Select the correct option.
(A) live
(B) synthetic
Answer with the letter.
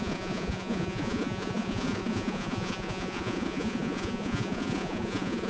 B